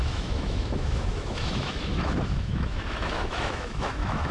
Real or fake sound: fake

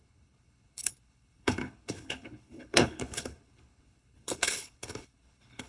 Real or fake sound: fake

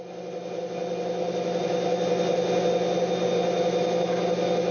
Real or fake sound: real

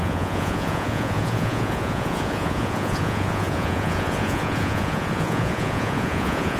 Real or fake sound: fake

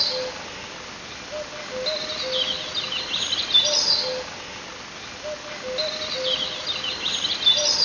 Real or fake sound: real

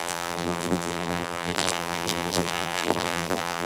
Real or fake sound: fake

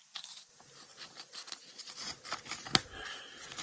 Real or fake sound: real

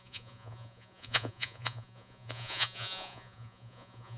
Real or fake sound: fake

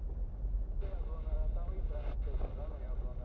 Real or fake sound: real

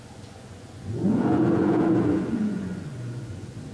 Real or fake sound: fake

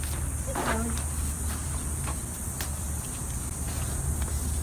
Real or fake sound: real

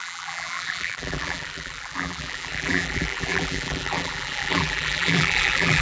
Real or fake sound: fake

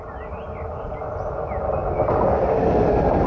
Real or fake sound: real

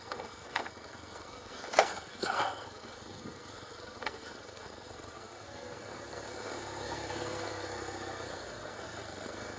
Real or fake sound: fake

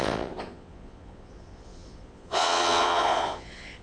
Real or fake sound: fake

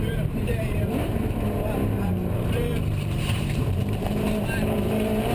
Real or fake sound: fake